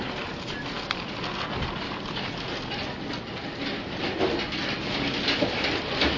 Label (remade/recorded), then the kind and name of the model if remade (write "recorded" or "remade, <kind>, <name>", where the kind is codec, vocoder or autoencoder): recorded